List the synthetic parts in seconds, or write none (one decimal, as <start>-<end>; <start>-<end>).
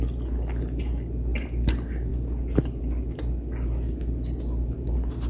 none